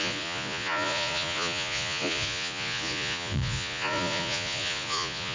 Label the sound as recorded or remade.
remade